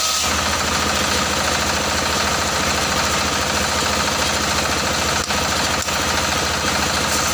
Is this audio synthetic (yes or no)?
no